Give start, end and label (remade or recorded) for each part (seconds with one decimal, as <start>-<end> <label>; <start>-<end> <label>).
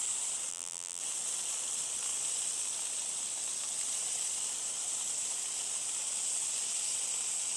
0.0-0.5 recorded; 0.5-1.0 remade; 1.0-7.6 recorded